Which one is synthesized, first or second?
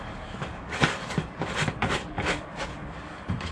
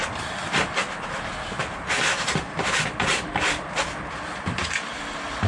first